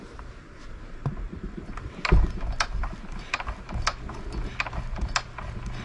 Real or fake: real